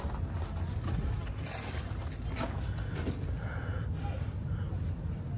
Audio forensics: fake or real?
real